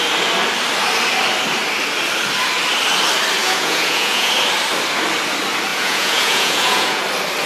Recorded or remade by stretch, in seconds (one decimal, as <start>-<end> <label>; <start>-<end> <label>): 0.0-3.4 recorded; 3.4-4.3 remade; 4.3-5.7 recorded; 5.7-7.0 remade; 7.0-7.5 recorded